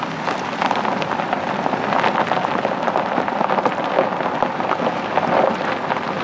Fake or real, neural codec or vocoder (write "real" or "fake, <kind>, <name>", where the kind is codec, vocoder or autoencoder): real